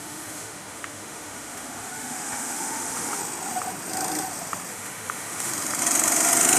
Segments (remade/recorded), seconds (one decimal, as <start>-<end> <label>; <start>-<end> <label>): 0.0-3.2 remade; 3.2-4.7 recorded; 4.7-5.5 remade; 5.5-6.6 recorded